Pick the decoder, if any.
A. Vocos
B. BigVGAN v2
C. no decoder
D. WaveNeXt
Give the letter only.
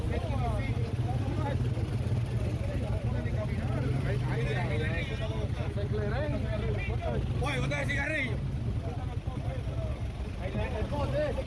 C